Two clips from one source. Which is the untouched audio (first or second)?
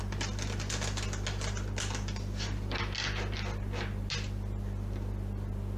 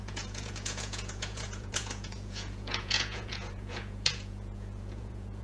first